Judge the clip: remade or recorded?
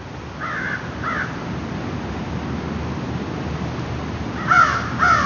recorded